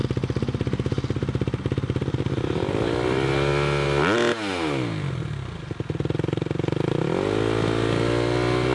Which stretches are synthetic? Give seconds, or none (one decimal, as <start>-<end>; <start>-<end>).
none